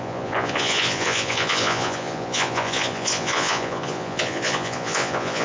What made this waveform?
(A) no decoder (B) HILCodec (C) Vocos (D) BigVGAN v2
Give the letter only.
C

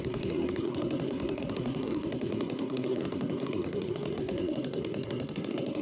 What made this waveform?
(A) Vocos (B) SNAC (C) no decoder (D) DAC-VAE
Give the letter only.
B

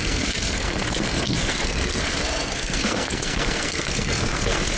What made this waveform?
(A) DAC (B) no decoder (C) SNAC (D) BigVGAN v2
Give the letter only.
C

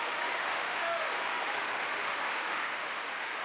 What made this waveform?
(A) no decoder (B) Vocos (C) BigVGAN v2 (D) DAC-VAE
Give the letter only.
D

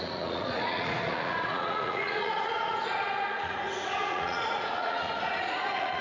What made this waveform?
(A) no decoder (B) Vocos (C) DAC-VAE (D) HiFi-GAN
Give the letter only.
B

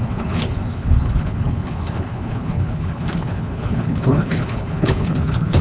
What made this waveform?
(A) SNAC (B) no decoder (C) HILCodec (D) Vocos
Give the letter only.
C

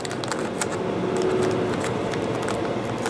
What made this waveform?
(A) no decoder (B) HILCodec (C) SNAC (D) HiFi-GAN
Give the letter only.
A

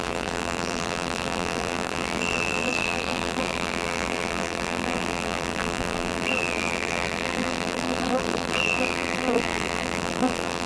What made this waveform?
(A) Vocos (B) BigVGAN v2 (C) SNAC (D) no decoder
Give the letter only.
B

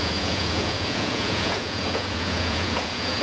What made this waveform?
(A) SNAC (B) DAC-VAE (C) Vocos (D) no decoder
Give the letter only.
C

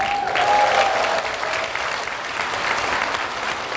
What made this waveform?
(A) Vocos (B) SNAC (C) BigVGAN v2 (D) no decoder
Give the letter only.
D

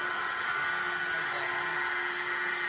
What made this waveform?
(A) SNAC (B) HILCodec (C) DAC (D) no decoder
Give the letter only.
D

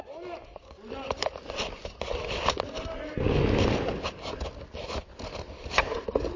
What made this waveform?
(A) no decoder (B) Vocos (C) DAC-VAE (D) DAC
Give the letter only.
A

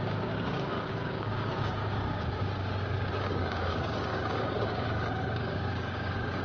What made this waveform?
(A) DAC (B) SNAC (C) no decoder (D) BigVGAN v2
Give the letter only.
A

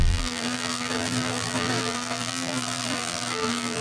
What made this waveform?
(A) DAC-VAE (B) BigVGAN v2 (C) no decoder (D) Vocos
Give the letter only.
B